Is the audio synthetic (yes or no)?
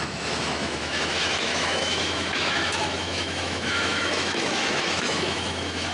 yes